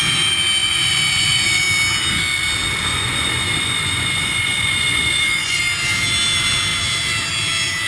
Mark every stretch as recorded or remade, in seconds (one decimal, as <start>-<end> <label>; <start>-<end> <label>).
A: 0.0-0.6 recorded; 0.6-1.6 remade; 1.6-2.9 recorded; 2.9-5.6 remade; 5.6-7.9 recorded